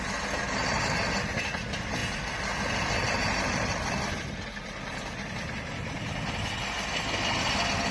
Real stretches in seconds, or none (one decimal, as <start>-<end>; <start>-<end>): 0.0-2.0; 5.1-7.9